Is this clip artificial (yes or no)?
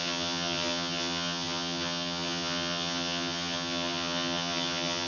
yes